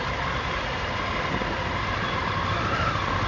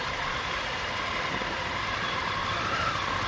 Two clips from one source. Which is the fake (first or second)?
second